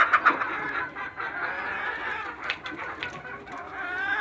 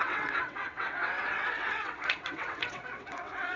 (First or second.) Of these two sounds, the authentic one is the first